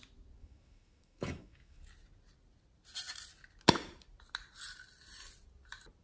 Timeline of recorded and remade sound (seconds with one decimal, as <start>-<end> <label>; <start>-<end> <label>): 0.0-0.4 recorded; 0.4-1.8 remade; 1.8-6.0 recorded